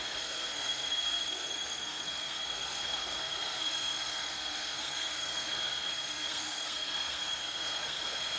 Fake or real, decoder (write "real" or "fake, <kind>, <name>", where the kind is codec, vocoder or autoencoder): fake, codec, SNAC